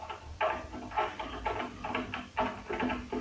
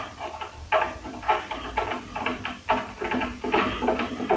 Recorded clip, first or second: first